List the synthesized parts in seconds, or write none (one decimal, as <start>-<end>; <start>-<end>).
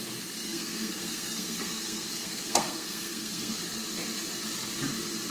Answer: 0.4-3.6